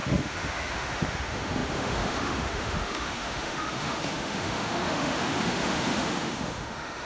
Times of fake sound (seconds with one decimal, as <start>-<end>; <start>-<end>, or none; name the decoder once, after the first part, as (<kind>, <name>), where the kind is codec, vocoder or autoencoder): 0.0-7.1 (autoencoder, DAC-VAE)